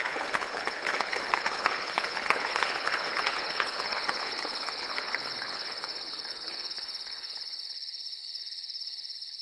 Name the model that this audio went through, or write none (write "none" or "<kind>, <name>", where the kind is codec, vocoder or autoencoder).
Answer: codec, HILCodec